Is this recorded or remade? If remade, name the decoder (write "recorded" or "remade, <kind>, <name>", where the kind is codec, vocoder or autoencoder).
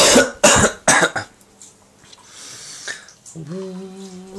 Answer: recorded